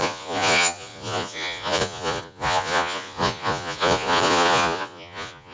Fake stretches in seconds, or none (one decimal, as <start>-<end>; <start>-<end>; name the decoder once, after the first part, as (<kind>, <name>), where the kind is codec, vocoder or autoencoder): 0.0-5.5 (vocoder, Vocos)